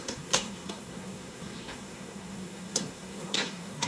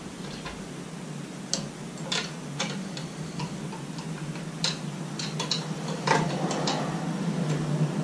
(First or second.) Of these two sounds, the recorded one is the second